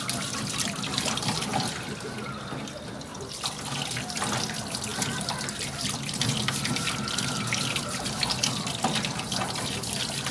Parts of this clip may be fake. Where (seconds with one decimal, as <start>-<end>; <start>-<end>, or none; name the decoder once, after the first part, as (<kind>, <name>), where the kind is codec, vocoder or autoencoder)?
none

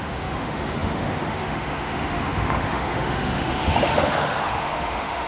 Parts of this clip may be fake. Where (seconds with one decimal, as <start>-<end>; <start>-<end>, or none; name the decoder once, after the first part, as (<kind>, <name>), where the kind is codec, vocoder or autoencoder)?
0.0-5.3 (autoencoder, DAC-VAE)